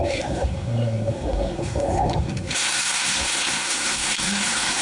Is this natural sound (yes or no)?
no